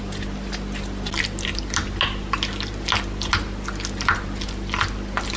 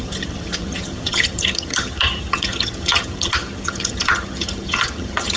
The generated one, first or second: second